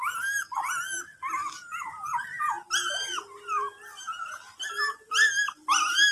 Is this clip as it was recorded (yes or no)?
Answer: yes